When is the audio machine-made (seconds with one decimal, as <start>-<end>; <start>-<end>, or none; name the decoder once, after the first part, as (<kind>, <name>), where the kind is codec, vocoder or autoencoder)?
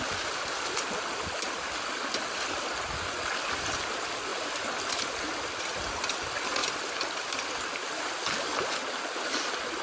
4.3-5.3 (vocoder, BigVGAN v2); 6.6-7.9